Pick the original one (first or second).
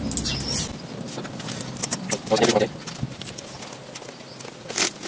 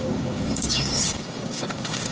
first